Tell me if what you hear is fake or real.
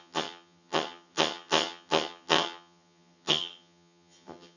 fake